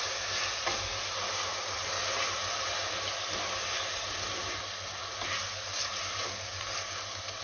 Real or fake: real